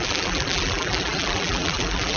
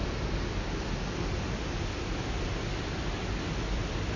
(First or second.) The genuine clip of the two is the second